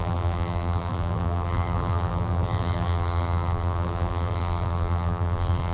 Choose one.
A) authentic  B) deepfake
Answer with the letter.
B